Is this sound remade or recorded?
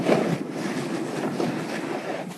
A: recorded